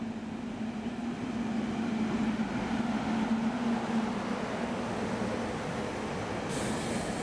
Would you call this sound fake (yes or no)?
no